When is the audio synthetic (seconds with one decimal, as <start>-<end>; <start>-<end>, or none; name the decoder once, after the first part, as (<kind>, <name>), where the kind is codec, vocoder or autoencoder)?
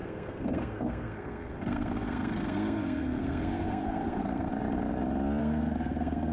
0.0-4.5 (codec, SNAC); 5.4-6.3